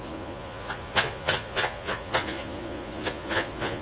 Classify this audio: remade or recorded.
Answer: remade